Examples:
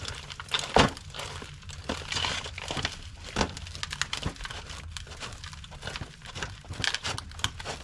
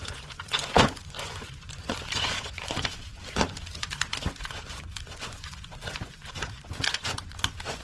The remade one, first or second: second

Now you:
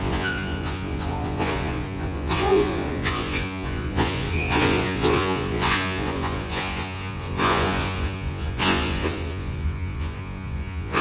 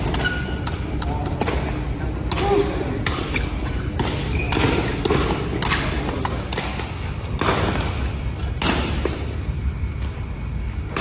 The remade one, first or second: first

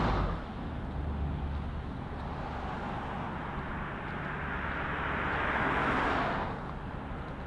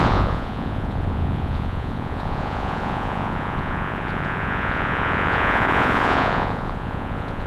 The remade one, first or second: second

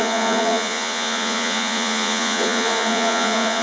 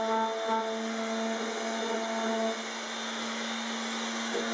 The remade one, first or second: first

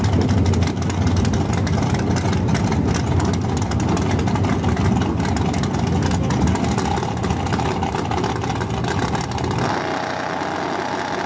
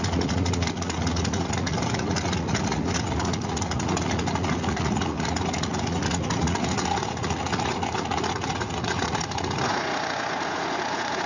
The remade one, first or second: second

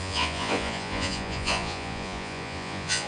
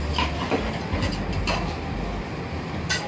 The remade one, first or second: first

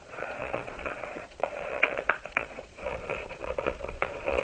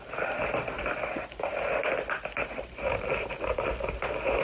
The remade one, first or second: first